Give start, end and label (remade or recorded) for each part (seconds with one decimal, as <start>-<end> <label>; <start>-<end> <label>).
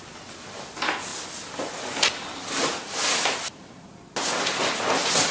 0.0-5.3 recorded